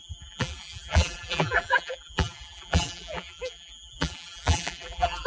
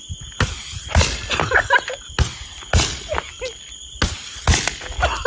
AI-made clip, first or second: first